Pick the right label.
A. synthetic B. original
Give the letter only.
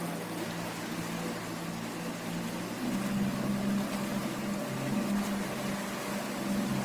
B